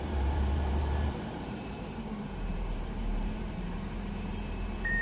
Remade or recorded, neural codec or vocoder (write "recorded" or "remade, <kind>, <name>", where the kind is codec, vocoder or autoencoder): remade, vocoder, BigVGAN v2